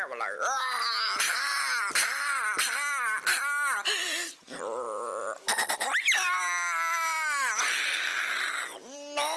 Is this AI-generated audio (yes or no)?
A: no